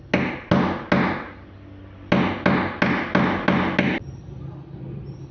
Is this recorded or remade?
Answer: recorded